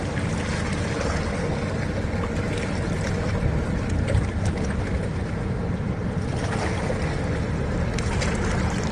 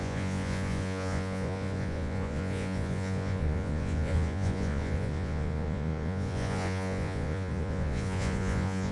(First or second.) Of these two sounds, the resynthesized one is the second